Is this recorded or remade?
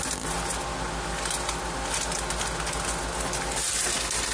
recorded